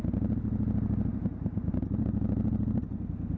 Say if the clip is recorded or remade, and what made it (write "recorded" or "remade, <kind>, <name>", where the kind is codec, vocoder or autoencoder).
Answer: recorded